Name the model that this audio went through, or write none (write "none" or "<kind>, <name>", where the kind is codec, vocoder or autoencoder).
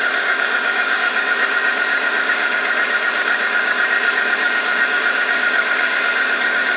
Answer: codec, DAC